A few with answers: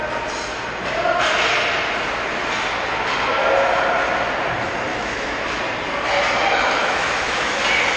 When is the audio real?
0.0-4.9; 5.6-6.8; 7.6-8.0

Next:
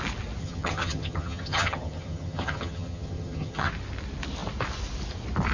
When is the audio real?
0.0-0.4; 3.7-5.5

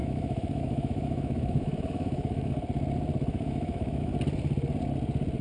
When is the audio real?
2.5-3.3; 4.1-5.4